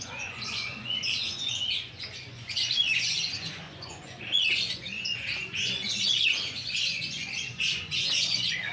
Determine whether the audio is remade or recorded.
remade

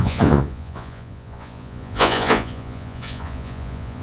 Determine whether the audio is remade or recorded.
remade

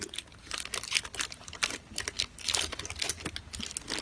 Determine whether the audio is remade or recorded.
recorded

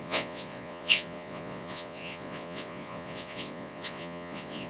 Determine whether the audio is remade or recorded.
remade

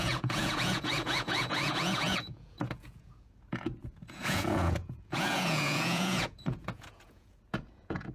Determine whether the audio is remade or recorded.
remade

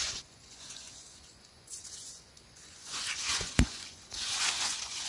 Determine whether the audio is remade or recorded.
remade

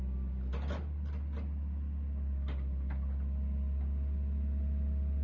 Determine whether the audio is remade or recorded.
recorded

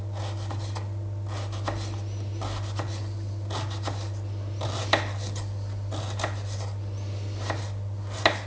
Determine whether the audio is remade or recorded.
recorded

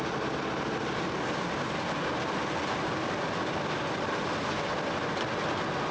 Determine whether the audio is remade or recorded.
recorded